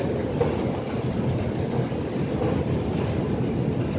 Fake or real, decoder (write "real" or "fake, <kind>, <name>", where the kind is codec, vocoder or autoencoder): real